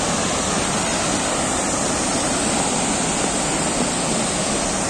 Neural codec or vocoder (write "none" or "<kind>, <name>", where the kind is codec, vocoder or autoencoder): none